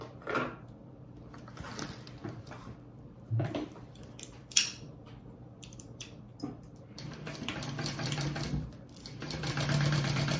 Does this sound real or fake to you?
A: fake